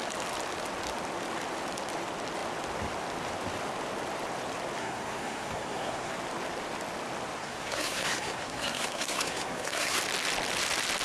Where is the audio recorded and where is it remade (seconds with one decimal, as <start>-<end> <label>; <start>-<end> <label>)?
0.0-4.8 recorded; 4.8-6.1 remade; 6.1-7.4 recorded; 7.4-10.0 remade; 10.0-11.0 recorded